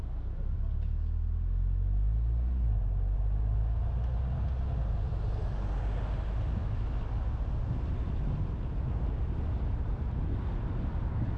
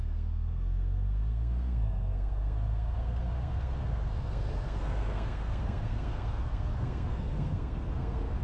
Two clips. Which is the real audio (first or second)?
first